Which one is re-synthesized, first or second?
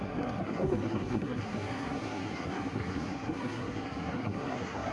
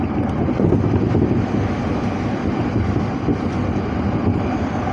first